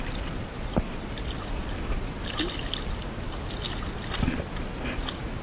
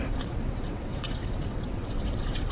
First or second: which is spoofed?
second